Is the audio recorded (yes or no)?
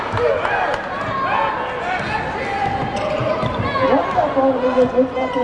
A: yes